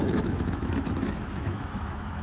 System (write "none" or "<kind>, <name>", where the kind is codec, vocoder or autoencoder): autoencoder, DAC-VAE